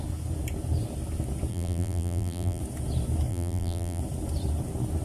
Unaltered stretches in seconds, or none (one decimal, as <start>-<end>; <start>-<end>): 0.0-1.5; 2.6-3.3; 4.0-5.0

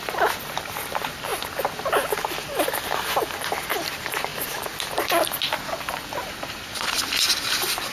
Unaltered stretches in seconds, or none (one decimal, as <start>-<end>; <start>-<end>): 0.0-4.3; 5.1-7.9